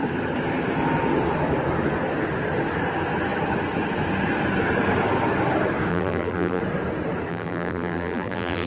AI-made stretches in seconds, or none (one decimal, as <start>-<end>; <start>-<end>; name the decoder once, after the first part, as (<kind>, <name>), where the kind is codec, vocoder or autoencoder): 5.9-6.6 (vocoder, BigVGAN v2); 7.3-8.7